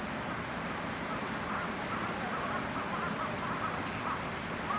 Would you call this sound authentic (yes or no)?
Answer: yes